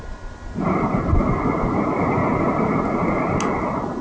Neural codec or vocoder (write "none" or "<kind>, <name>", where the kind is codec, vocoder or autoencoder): none